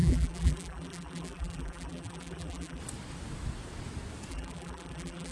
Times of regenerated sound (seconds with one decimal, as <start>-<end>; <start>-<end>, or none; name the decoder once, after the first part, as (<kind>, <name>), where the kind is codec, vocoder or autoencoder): 0.0-2.8 (vocoder, BigVGAN v2); 4.3-5.3